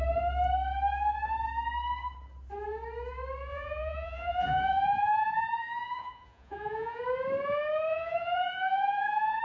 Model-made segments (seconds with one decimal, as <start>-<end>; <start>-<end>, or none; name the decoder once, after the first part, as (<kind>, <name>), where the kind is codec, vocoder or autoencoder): 3.5-7.0 (vocoder, Vocos); 7.9-9.4